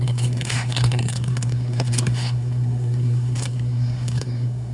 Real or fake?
fake